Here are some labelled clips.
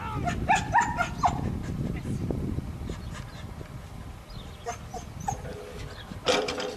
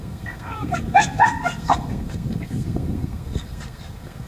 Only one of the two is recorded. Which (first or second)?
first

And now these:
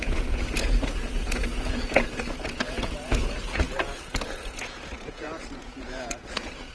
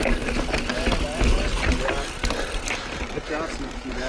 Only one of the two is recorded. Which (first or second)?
second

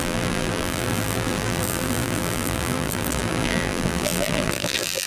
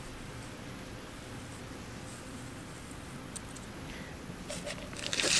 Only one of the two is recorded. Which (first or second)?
second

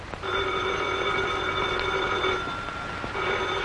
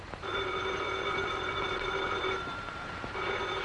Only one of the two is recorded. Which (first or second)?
first